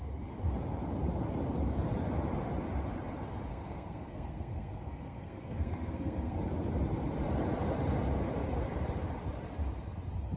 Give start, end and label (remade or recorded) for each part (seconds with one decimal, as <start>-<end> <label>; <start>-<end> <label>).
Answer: 0.0-3.5 recorded; 3.5-6.4 remade; 6.4-10.4 recorded